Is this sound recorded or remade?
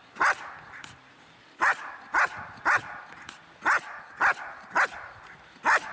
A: recorded